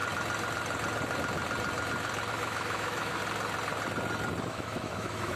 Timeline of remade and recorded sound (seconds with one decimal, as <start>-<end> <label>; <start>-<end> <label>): 0.0-2.3 recorded; 2.3-3.2 remade; 3.2-4.5 recorded; 4.5-5.4 remade